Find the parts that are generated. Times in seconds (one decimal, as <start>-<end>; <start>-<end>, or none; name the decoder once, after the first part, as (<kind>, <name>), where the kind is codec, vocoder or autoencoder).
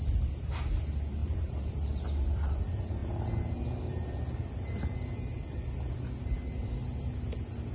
1.2-2.5 (vocoder, BigVGAN v2)